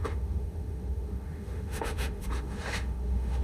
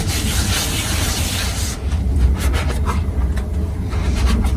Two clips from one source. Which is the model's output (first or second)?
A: first